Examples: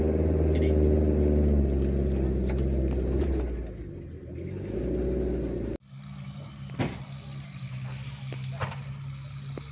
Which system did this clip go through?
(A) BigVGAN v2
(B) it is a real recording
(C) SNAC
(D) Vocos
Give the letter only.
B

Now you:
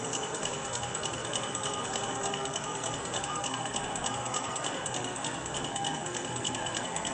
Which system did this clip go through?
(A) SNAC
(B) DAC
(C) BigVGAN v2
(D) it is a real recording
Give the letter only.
A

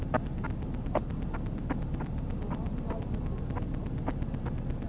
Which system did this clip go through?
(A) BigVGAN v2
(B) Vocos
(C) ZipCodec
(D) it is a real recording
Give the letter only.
D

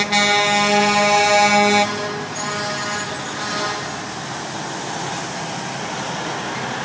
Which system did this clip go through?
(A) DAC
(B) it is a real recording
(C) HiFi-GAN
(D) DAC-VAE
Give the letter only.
B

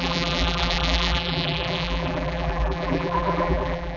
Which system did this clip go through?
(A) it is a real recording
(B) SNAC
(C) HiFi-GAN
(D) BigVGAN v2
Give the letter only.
D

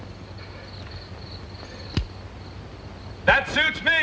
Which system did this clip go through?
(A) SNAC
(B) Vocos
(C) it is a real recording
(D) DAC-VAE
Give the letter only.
C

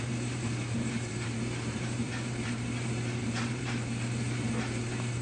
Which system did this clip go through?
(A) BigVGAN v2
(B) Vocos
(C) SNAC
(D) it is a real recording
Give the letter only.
A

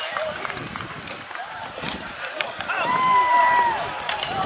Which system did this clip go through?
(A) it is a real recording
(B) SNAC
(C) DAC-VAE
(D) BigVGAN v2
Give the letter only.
D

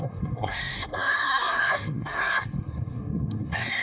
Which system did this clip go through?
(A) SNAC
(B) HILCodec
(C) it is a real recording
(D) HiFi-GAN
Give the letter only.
A